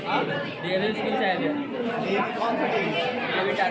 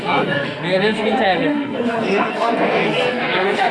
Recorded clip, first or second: first